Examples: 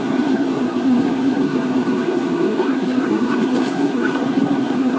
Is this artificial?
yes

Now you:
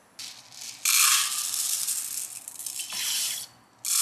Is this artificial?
no